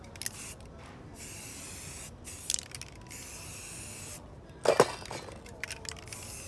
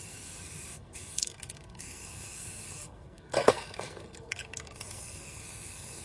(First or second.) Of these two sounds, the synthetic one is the second